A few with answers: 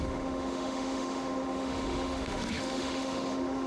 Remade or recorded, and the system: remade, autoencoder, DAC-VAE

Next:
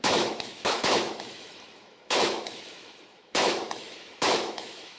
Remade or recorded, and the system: remade, autoencoder, DAC-VAE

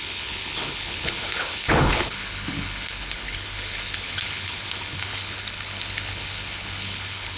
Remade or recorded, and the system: remade, codec, HILCodec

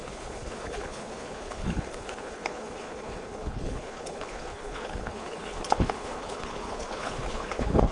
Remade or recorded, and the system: remade, codec, HILCodec